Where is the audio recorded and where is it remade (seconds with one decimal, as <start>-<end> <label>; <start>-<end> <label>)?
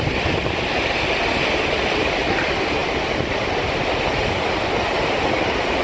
0.0-5.8 recorded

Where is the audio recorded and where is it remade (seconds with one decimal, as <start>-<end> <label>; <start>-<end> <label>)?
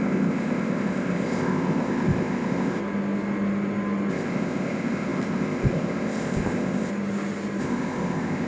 0.0-2.8 remade; 2.8-4.1 recorded; 4.1-6.9 remade; 6.9-7.6 recorded; 7.6-8.5 remade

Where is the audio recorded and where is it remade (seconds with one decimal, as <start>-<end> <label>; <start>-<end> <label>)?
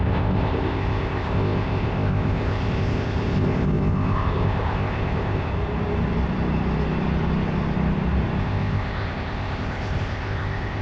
0.0-5.5 remade; 5.5-8.4 recorded; 8.4-10.8 remade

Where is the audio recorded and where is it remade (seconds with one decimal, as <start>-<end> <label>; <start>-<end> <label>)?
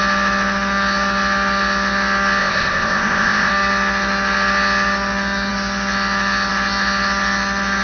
0.0-2.4 recorded; 2.4-3.5 remade; 3.5-7.8 recorded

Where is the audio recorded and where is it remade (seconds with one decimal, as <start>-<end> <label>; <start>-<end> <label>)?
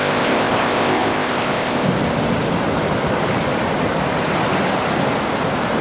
0.0-1.9 remade; 1.9-5.8 recorded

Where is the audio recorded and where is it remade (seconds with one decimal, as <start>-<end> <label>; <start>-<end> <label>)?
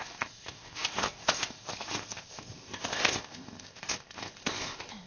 0.0-5.1 remade